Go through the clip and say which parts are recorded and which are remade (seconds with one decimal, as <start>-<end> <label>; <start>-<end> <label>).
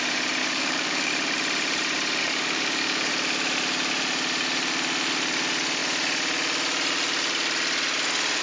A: 0.0-0.4 recorded; 0.4-1.1 remade; 1.1-2.2 recorded; 2.2-3.1 remade; 3.1-8.4 recorded